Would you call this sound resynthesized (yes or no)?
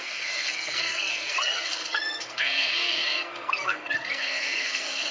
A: yes